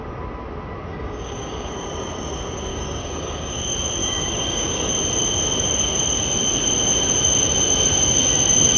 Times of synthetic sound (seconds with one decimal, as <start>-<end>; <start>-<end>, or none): 0.9-1.7; 2.7-3.6; 4.0-4.9

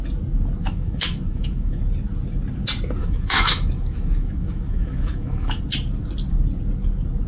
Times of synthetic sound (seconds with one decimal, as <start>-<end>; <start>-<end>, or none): 0.6-1.8; 3.0-5.6

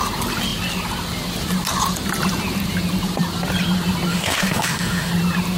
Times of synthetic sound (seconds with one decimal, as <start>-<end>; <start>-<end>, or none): 4.1-5.1

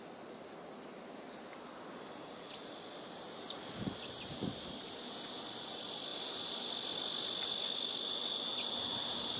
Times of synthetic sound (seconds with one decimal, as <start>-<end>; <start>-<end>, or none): none

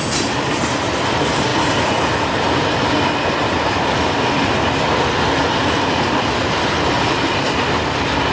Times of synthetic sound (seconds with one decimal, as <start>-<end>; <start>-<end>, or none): none

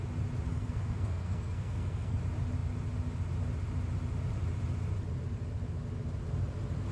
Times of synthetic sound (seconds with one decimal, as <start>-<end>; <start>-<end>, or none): 0.5-2.2